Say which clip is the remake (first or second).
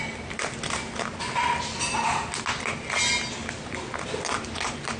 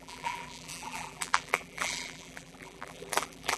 second